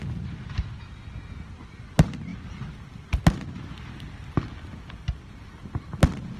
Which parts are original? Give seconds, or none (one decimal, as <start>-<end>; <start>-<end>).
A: 0.0-6.4